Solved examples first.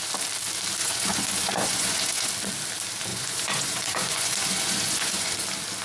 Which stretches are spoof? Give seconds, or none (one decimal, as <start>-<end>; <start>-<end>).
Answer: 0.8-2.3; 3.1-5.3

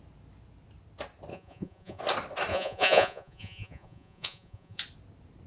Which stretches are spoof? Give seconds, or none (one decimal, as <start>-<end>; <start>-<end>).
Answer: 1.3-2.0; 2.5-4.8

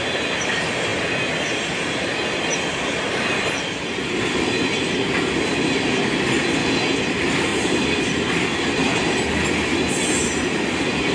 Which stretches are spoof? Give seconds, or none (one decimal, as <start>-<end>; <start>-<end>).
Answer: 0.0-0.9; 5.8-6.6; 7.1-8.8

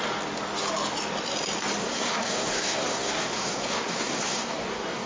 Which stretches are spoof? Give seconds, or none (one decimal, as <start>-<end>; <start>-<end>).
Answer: 1.8-5.1